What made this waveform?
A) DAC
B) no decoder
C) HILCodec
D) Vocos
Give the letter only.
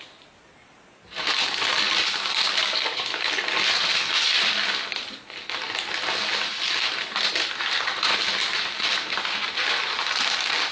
B